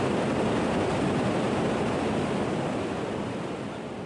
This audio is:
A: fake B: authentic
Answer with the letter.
B